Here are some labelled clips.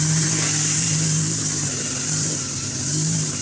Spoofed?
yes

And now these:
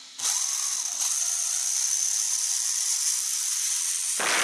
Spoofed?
no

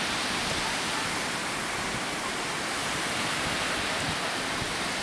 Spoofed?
yes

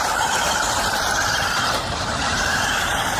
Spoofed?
yes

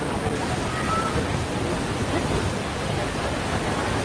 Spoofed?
no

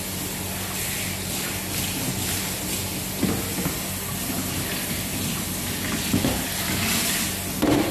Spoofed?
no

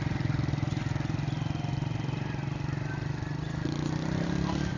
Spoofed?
no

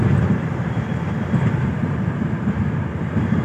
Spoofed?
yes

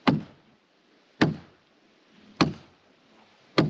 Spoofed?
no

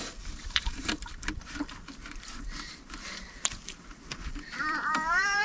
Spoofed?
yes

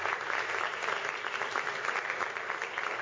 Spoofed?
no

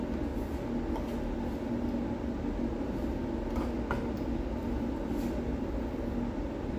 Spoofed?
no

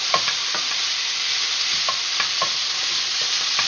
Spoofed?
yes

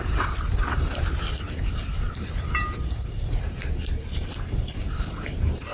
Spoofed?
yes